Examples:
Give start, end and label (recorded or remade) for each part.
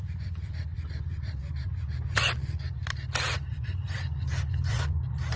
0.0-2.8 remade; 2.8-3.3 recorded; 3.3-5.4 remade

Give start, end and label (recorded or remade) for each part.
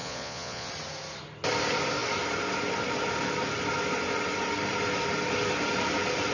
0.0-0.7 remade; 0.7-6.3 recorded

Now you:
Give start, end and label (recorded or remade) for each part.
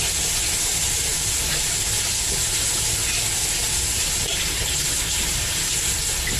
0.0-1.1 recorded; 1.1-1.6 remade; 1.6-4.0 recorded; 4.0-5.6 remade; 5.6-6.4 recorded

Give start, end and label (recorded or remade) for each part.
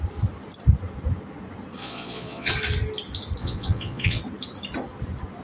0.0-1.8 recorded; 1.8-2.5 remade; 2.5-3.4 recorded; 3.4-4.2 remade; 4.2-5.4 recorded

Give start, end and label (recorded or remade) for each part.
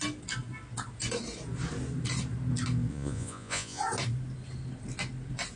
0.0-2.9 recorded; 2.9-3.8 remade; 3.8-5.6 recorded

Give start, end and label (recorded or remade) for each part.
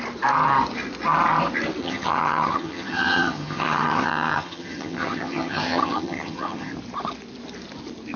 0.0-1.8 recorded; 1.8-6.7 remade; 6.7-8.2 recorded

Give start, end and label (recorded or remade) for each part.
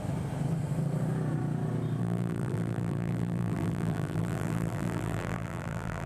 0.0-2.0 recorded; 2.0-6.1 remade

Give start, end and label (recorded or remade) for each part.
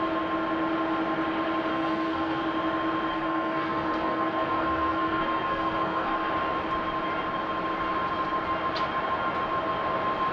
0.0-1.7 recorded; 1.7-2.4 remade; 2.4-3.1 recorded; 3.1-6.3 remade; 6.3-10.3 recorded